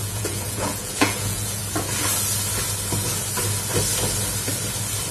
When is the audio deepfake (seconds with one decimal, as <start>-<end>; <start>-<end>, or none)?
0.0-1.6